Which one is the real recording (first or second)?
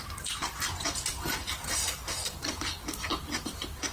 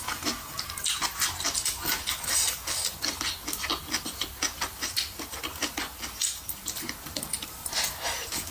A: second